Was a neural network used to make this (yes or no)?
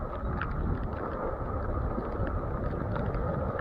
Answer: no